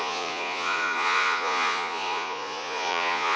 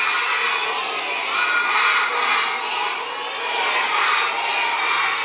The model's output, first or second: first